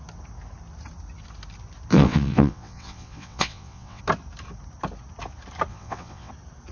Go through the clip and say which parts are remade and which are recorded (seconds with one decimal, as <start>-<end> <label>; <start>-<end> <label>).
0.0-1.9 recorded; 1.9-4.0 remade; 4.0-5.7 recorded; 5.7-6.3 remade; 6.3-6.7 recorded